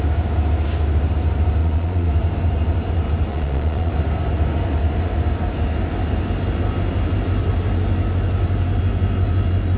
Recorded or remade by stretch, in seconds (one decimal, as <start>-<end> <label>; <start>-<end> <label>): 0.0-1.6 recorded; 1.6-2.1 remade; 2.1-3.3 recorded; 3.3-3.9 remade; 3.9-9.8 recorded